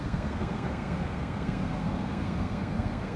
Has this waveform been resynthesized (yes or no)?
yes